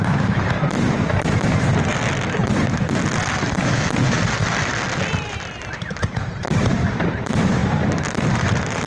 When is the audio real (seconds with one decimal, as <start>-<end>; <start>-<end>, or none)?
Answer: 1.9-5.2; 7.6-8.3